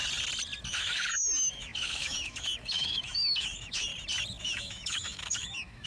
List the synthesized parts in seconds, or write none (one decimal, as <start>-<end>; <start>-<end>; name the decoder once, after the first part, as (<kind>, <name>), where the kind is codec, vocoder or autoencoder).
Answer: 0.7-3.9 (autoencoder, DAC-VAE); 4.4-5.9

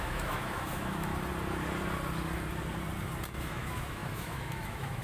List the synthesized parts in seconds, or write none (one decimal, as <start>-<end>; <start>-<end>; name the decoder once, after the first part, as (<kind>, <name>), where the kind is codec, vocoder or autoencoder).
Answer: 0.0-1.1 (autoencoder, DAC-VAE); 3.4-5.0

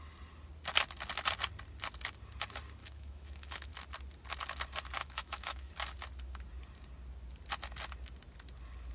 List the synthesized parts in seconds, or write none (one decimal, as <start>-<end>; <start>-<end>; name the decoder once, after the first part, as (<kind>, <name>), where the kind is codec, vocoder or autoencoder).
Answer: 2.8-3.7 (autoencoder, DAC-VAE); 5.0-5.7

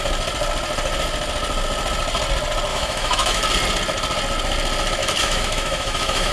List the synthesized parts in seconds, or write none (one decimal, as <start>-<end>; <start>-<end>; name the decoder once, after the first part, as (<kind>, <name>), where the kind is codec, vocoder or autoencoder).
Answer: 2.7-3.4 (autoencoder, DAC-VAE); 5.0-6.3

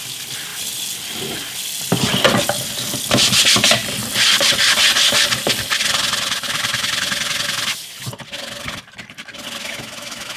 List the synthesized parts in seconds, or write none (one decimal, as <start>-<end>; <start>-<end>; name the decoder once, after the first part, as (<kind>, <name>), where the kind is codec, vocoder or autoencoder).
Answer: 9.6-10.4 (autoencoder, DAC-VAE)

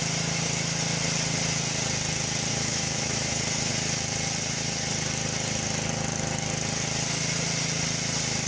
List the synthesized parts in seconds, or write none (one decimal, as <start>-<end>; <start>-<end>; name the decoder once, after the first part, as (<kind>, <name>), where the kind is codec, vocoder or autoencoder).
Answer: 2.5-3.7 (autoencoder, DAC-VAE)

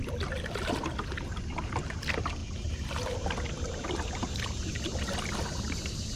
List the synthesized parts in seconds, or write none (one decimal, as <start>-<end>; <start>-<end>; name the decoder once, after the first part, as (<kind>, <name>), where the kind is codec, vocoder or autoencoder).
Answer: none